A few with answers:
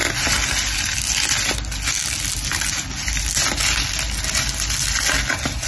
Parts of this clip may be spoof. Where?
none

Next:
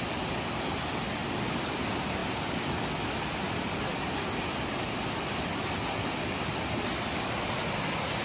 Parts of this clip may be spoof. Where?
none

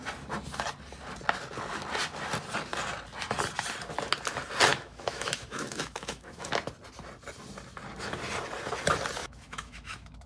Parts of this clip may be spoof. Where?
4.7-6.5 (autoencoder, DAC-VAE); 9.2-10.3

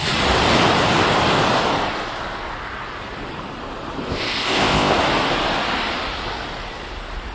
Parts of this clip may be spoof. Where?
4.1-5.0 (codec, ZipCodec)